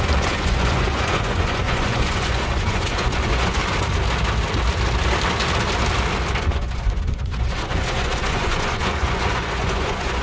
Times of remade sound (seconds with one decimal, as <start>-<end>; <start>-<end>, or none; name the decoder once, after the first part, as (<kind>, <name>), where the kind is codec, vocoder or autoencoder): 0.0-3.6 (vocoder, Vocos); 6.4-10.2